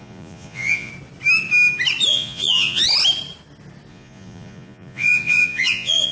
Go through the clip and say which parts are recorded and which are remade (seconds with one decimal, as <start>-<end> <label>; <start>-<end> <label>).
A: 0.0-0.9 remade; 0.9-2.1 recorded; 2.1-2.8 remade; 2.8-3.9 recorded; 3.9-6.1 remade